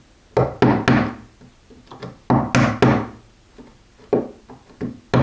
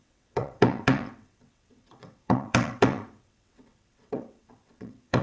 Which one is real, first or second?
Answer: first